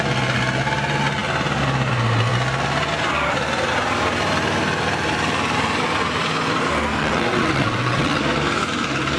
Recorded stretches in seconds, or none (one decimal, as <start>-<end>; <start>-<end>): 0.0-7.0; 8.2-9.2